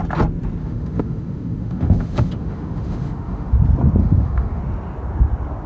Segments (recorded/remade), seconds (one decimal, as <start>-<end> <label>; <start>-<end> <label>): 0.0-0.6 recorded; 0.6-3.5 remade; 3.5-4.0 recorded; 4.0-4.6 remade; 4.6-5.7 recorded